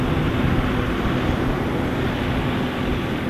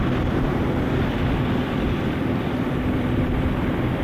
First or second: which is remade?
second